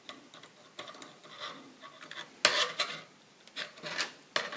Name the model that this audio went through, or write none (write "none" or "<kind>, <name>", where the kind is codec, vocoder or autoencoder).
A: none